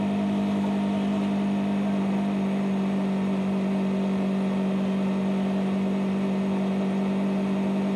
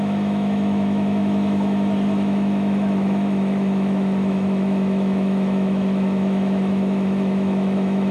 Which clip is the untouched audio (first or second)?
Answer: first